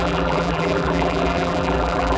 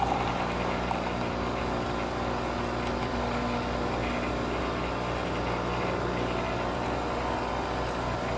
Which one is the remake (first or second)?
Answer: first